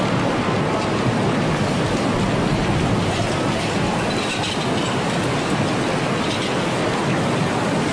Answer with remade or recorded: recorded